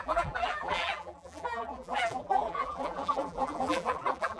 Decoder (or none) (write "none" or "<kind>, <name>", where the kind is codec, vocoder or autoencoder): vocoder, BigVGAN v2